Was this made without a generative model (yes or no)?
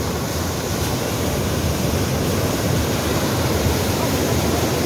no